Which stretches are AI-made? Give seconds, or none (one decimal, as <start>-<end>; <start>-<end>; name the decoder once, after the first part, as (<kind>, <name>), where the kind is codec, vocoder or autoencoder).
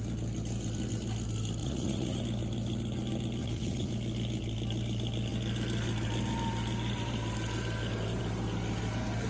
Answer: 1.6-2.2 (vocoder, Vocos); 3.4-3.9